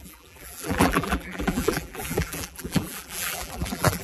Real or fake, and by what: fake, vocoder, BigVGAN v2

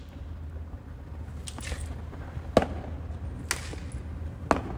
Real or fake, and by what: real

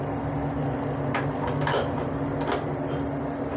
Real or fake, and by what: real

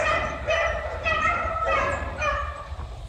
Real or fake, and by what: fake, vocoder, BigVGAN v2